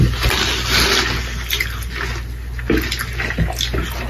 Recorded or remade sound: recorded